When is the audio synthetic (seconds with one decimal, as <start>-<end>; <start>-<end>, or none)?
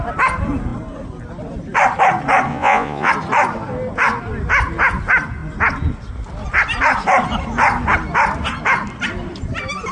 2.5-3.1